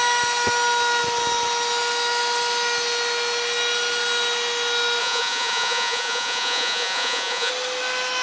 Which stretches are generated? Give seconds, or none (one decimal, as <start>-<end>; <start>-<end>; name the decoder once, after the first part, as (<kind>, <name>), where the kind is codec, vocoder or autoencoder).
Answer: 5.0-7.5 (vocoder, Vocos)

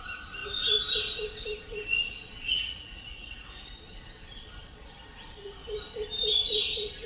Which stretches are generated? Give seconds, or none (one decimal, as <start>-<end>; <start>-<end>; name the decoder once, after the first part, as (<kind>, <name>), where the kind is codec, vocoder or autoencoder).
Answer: 2.0-3.7 (vocoder, Vocos)

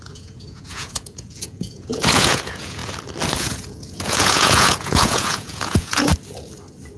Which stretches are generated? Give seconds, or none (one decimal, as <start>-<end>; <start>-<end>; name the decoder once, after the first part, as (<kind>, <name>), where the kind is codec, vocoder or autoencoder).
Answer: 0.0-2.8 (vocoder, Vocos); 3.4-6.1

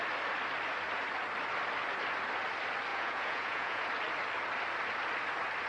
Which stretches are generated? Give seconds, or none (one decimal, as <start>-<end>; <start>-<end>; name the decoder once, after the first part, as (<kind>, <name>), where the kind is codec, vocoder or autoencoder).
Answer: 2.9-3.8 (vocoder, Vocos)

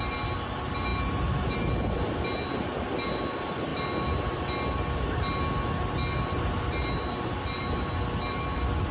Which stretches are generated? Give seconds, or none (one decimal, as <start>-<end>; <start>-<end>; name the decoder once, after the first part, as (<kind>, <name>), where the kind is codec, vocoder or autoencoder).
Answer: none

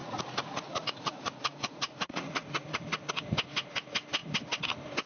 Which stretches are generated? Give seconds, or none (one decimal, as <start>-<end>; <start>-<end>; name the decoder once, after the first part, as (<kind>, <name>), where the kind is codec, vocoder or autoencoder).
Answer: 0.0-3.1 (vocoder, Vocos)

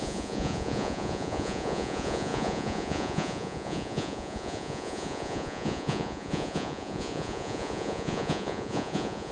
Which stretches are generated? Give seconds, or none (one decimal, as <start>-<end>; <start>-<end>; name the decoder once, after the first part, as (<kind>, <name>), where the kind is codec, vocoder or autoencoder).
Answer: 0.0-9.3 (vocoder, Vocos)

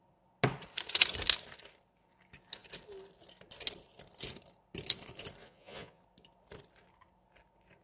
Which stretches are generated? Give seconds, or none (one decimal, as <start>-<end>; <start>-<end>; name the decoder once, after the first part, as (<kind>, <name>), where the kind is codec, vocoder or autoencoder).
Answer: 5.4-6.0 (vocoder, Vocos)